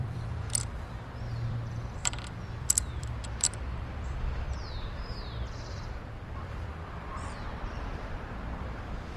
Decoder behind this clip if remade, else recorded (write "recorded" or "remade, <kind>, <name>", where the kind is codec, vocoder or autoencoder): remade, vocoder, BigVGAN v2